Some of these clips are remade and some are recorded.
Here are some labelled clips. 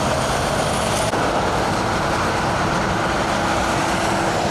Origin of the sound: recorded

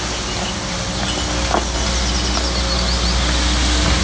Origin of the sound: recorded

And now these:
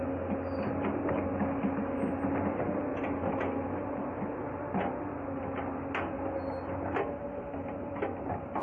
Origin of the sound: recorded